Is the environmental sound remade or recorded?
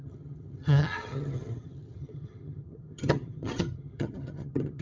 remade